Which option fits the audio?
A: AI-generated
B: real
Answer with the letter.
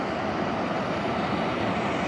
B